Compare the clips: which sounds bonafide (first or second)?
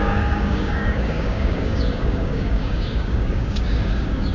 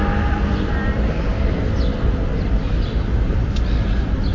second